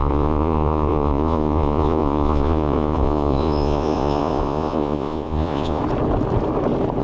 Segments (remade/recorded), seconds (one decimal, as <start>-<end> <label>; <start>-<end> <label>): 0.0-5.8 remade; 5.8-7.0 recorded